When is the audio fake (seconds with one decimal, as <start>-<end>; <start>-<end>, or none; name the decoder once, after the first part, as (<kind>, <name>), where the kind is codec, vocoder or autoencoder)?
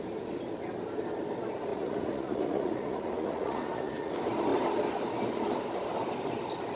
1.7-4.1 (vocoder, Vocos)